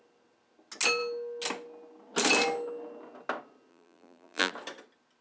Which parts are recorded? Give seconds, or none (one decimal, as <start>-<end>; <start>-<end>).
0.0-3.7; 4.5-5.2